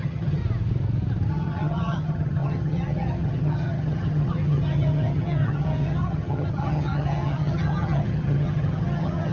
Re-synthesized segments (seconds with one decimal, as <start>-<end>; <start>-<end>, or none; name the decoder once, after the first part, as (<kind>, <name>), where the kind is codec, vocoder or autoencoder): 0.0-0.4 (vocoder, HiFi-GAN); 1.3-9.3